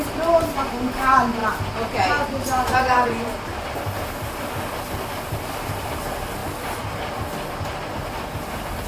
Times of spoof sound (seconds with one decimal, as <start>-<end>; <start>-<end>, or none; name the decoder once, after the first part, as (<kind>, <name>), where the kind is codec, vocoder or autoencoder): none